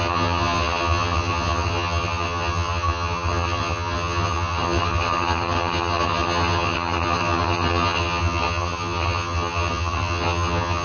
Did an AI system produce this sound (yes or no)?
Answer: yes